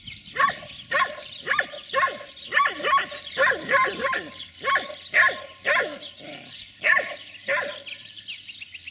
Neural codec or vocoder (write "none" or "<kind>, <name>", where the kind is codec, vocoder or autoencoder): none